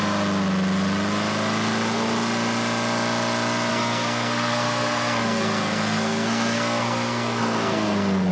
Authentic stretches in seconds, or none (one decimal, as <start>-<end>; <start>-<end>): 0.0-3.7